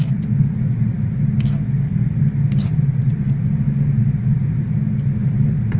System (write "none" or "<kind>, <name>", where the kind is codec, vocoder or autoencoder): none